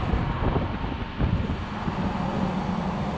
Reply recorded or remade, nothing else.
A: recorded